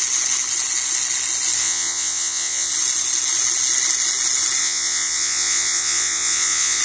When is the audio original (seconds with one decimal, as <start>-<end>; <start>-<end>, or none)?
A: 0.0-1.6; 2.7-4.6